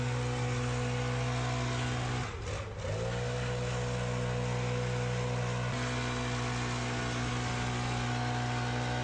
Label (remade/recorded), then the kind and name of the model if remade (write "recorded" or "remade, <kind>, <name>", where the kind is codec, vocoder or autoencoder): recorded